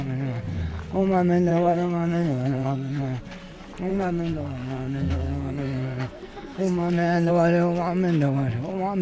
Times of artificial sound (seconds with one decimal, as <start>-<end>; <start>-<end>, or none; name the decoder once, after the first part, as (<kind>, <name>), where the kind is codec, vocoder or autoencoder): 1.5-3.0 (codec, SNAC); 3.9-7.3